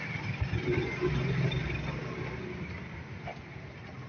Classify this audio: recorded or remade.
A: recorded